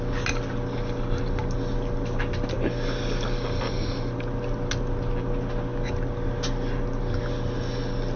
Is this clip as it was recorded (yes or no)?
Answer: yes